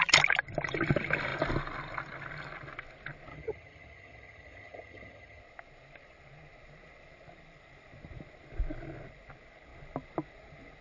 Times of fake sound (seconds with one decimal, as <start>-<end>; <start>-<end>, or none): 3.3-5.4